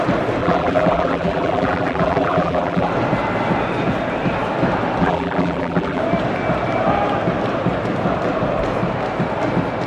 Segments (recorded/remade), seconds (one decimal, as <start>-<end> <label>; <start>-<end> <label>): 0.0-0.4 recorded; 0.4-2.9 remade; 2.9-5.0 recorded; 5.0-6.0 remade; 6.0-9.9 recorded